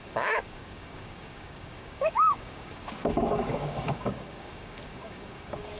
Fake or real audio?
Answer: fake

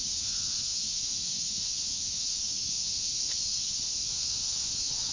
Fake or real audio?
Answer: fake